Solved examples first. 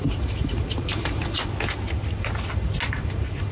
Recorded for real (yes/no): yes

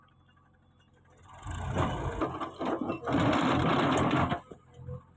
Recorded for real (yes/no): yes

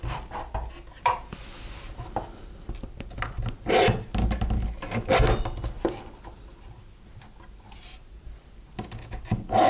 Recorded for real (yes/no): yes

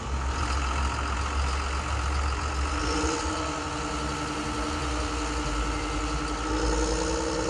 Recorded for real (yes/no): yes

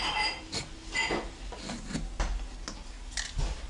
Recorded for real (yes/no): yes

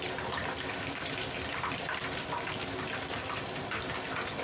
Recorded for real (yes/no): yes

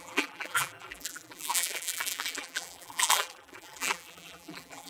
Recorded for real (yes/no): no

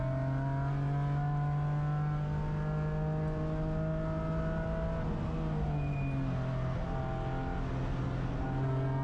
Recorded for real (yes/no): yes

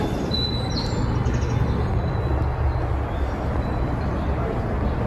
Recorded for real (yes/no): yes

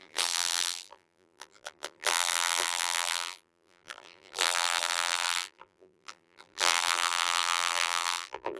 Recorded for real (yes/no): no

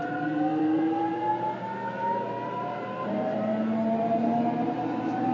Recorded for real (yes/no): no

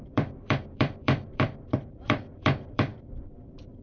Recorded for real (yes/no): no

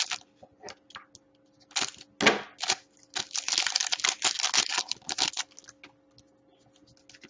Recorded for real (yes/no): yes